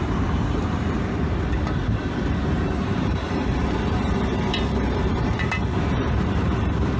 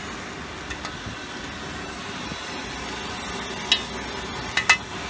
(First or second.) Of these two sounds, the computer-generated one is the first